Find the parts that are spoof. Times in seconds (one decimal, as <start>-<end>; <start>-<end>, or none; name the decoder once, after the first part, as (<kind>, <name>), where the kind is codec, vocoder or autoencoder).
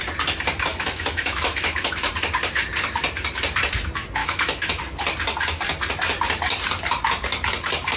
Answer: 0.7-2.1 (autoencoder, DAC-VAE); 4.2-4.8